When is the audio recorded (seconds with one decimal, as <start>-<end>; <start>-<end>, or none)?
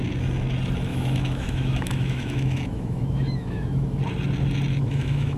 0.0-0.9; 4.0-4.7